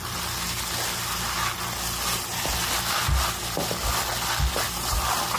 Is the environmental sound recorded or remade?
recorded